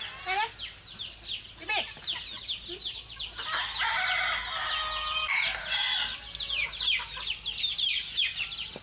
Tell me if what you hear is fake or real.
real